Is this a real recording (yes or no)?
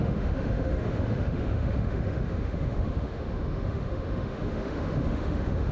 no